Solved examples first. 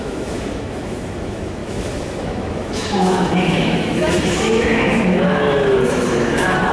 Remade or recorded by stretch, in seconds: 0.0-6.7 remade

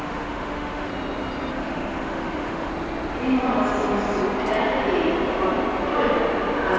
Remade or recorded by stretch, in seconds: 0.0-0.9 remade; 0.9-1.5 recorded; 1.5-2.7 remade; 2.7-6.8 recorded

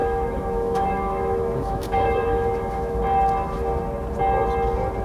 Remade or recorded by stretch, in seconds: 0.0-3.0 remade; 3.0-5.0 recorded

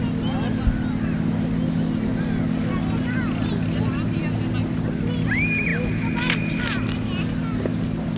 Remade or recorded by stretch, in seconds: 0.0-8.2 recorded

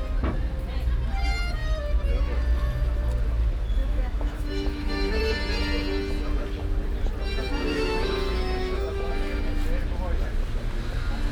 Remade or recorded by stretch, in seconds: 0.0-3.8 recorded; 3.8-5.2 remade; 5.2-7.7 recorded; 7.7-9.4 remade; 9.4-11.3 recorded

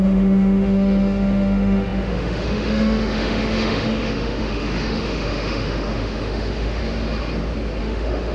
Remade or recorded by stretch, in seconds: 0.0-6.8 remade; 6.8-7.8 recorded; 7.8-8.3 remade

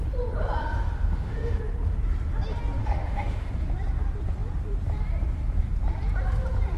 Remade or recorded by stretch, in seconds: 0.0-0.6 recorded; 0.6-1.6 remade; 1.6-2.8 recorded; 2.8-3.5 remade; 3.5-6.8 recorded